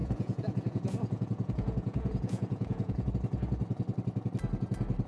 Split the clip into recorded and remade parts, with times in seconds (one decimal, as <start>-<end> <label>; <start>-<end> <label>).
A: 0.0-3.1 remade; 3.1-5.1 recorded